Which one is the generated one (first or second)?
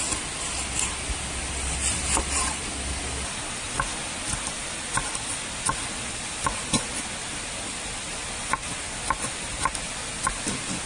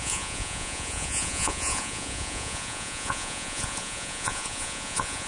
second